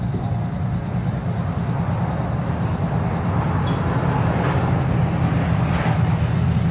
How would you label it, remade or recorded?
recorded